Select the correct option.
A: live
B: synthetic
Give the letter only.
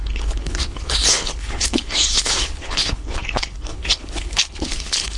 B